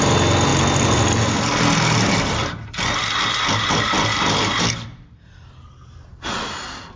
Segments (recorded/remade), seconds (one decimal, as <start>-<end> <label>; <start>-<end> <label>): 0.0-7.0 recorded